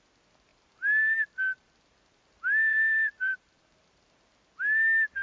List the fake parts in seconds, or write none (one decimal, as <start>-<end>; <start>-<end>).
0.5-1.7; 2.7-4.0